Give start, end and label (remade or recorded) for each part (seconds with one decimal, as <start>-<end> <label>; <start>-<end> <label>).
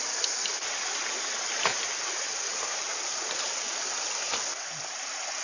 0.0-5.4 recorded